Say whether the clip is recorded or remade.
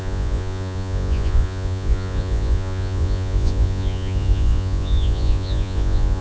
remade